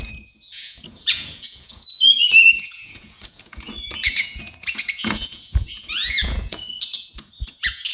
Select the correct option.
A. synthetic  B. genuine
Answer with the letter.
A